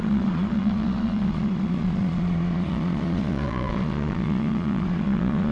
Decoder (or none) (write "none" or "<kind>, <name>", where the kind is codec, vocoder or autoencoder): vocoder, Vocos